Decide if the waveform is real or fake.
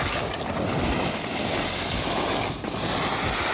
real